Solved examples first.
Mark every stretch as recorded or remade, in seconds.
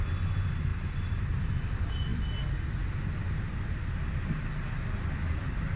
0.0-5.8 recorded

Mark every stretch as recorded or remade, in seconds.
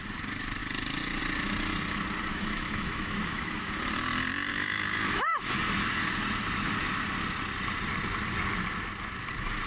0.0-2.3 recorded; 2.3-3.7 remade; 3.7-4.5 recorded; 4.5-5.5 remade; 5.5-9.7 recorded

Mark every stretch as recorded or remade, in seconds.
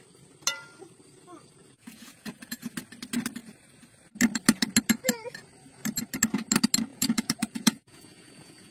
0.0-1.6 recorded; 1.6-2.7 remade; 2.7-6.9 recorded; 6.9-8.7 remade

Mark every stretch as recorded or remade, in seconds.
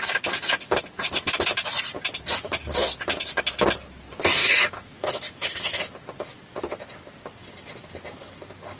0.0-4.4 recorded; 4.4-5.8 remade; 5.8-8.8 recorded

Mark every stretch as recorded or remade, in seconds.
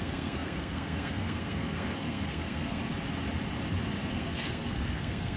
0.0-2.8 remade; 2.8-4.1 recorded; 4.1-5.4 remade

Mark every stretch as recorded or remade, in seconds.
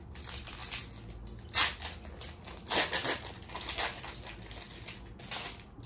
0.0-5.9 recorded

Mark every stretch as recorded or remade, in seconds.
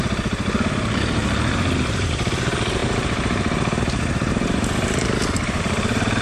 0.0-1.2 remade; 1.2-1.8 recorded; 1.8-6.2 remade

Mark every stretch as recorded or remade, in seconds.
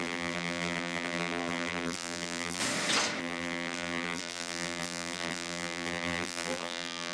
0.0-2.6 remade; 2.6-3.2 recorded; 3.2-7.1 remade